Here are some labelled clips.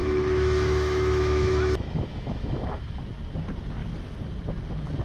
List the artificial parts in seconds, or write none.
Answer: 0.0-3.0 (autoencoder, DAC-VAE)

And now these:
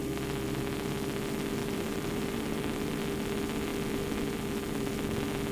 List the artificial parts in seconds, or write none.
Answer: 1.6-3.0 (vocoder, BigVGAN v2)

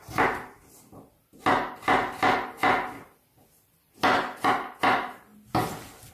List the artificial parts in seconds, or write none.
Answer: none

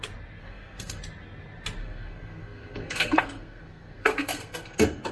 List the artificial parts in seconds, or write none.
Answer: 0.4-1.0 (codec, SNAC); 1.8-5.1

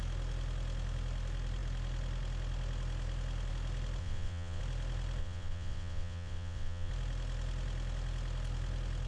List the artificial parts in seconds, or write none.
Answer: 4.0-4.6 (vocoder, WaveNeXt); 5.2-6.9

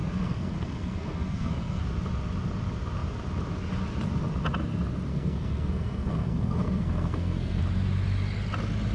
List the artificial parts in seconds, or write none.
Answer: 0.0-1.8 (codec, SNAC); 5.1-7.6